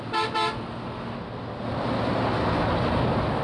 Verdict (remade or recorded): recorded